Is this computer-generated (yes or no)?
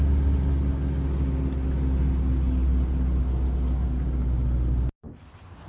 no